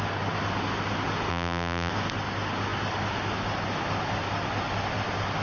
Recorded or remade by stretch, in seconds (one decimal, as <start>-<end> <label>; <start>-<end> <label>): 0.0-1.3 recorded; 1.3-1.9 remade; 1.9-5.4 recorded

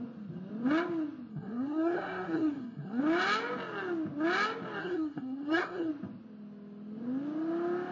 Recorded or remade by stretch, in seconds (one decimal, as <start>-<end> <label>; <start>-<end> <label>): 0.0-1.3 recorded; 1.3-3.0 remade; 3.0-4.8 recorded; 4.8-5.9 remade; 5.9-7.9 recorded

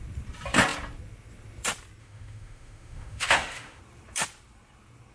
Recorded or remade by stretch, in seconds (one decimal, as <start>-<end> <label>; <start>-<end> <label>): 0.0-2.0 recorded; 2.0-3.8 remade; 3.8-5.1 recorded

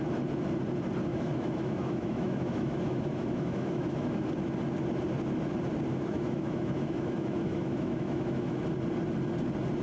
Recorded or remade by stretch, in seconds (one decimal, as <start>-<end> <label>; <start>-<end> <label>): 0.0-1.1 recorded; 1.1-4.3 remade; 4.3-5.9 recorded; 5.9-8.6 remade; 8.6-9.8 recorded

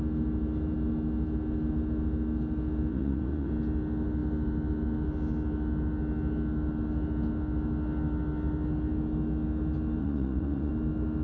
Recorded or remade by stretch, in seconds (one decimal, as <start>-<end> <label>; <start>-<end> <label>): 0.0-2.9 recorded; 2.9-3.5 remade; 3.5-10.0 recorded; 10.0-10.7 remade; 10.7-11.2 recorded

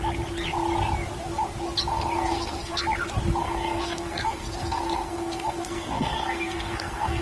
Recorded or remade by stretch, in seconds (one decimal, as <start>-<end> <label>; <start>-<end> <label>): 0.0-1.9 recorded; 1.9-2.8 remade; 2.8-3.4 recorded; 3.4-7.2 remade